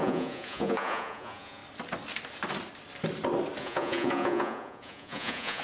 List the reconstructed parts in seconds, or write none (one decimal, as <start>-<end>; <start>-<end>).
0.0-1.6; 3.6-5.6